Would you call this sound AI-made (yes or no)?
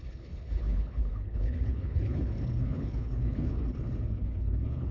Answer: yes